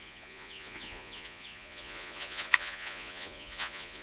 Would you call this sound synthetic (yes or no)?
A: yes